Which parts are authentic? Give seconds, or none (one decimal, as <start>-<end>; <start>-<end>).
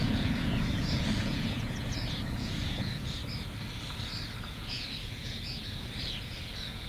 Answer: 3.2-4.4